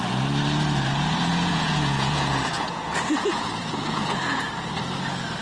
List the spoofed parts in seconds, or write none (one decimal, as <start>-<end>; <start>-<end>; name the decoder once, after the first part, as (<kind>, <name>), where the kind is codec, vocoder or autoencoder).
1.3-4.5 (vocoder, Vocos)